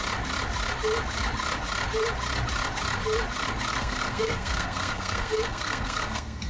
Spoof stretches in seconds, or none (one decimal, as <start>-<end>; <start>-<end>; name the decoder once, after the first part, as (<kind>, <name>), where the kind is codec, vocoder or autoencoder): 3.7-6.5 (codec, SNAC)

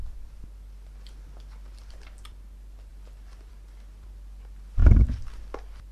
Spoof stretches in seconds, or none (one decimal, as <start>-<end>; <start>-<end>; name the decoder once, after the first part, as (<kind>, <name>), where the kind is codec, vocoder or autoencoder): none

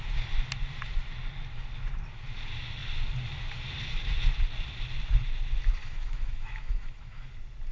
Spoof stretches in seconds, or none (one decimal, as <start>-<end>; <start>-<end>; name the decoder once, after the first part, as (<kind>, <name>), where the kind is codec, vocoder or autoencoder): 5.8-7.3 (autoencoder, DAC-VAE)

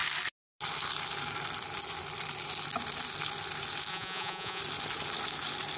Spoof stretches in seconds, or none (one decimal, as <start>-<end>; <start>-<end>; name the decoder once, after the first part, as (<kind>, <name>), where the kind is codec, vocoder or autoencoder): 3.9-4.6 (vocoder, Vocos)